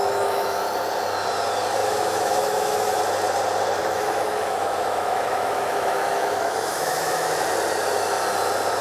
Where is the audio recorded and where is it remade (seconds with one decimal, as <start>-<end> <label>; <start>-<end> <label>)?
0.0-0.6 remade; 0.6-1.8 recorded; 1.8-3.0 remade; 3.0-3.8 recorded; 3.8-7.3 remade; 7.3-8.8 recorded